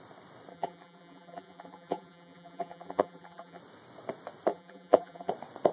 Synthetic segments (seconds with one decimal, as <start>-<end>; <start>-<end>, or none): 0.5-3.6; 4.5-5.3

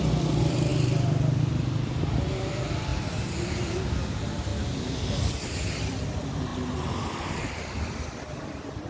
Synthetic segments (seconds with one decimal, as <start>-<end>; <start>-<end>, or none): 0.0-0.7; 1.4-4.5; 5.2-6.5; 7.5-8.9

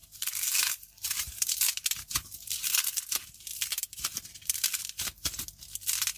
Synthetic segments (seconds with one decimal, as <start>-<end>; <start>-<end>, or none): 0.0-2.9; 3.5-4.8

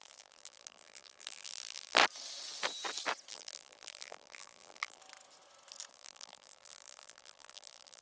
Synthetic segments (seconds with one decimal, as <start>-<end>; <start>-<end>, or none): 0.0-2.0; 3.3-5.0; 5.9-8.0

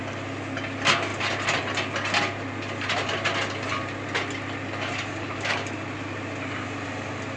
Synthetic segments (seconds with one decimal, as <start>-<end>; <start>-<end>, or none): none